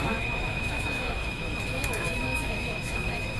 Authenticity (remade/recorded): remade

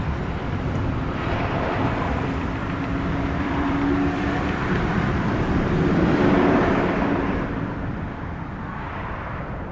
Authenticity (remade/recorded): remade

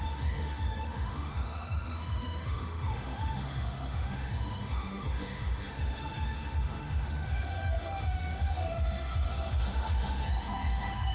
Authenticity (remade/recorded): remade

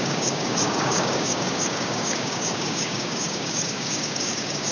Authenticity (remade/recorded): remade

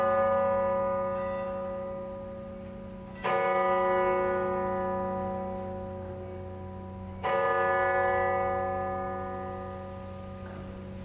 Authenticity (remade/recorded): recorded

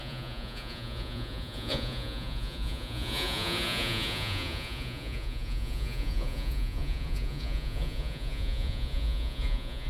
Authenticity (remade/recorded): remade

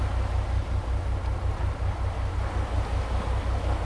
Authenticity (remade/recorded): recorded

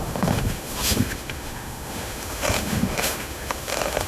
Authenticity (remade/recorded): remade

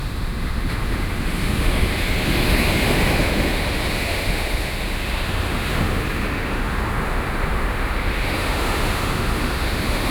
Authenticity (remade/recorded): remade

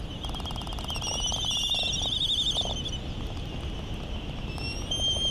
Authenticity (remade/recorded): recorded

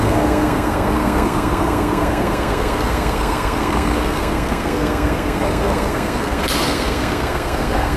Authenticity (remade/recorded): remade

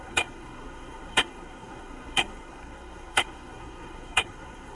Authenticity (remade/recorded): remade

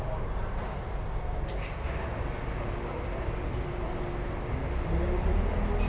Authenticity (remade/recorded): recorded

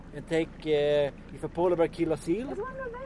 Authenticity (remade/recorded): recorded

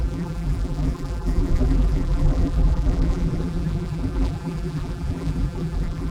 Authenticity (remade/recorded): remade